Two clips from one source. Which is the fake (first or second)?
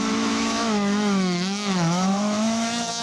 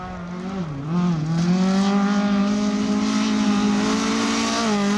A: first